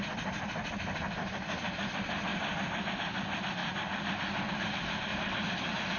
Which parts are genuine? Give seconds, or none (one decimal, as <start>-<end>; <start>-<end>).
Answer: 0.0-6.0